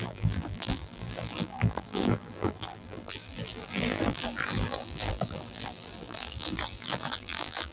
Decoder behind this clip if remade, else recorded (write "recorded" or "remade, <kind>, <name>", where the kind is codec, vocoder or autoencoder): remade, vocoder, BigVGAN v2